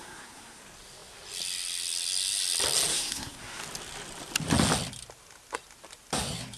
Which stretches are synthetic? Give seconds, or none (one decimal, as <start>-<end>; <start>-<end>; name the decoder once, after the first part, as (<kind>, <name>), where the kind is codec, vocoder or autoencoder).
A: 0.0-0.6 (codec, SNAC); 2.9-3.6